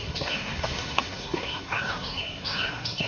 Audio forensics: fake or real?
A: fake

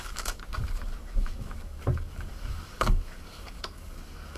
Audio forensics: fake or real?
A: fake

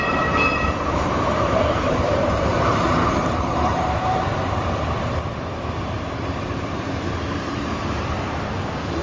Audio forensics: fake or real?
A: fake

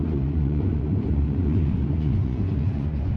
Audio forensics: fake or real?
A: fake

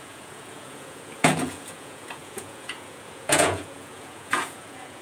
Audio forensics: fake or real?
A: fake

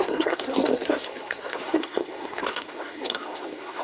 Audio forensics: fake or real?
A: fake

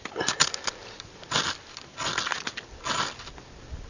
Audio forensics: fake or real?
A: real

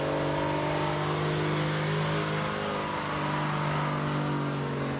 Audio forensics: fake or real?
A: real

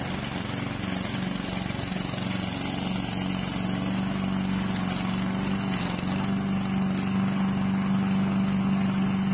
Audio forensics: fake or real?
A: real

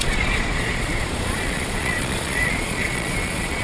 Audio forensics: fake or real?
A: fake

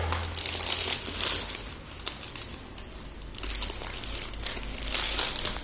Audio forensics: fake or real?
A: real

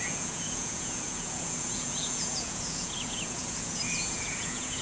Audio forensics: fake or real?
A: fake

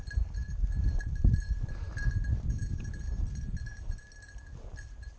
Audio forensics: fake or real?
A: real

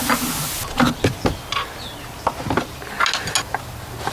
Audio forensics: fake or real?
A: real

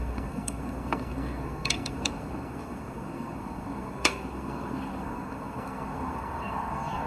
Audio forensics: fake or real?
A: fake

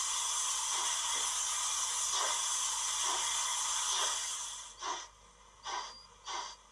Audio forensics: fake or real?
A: real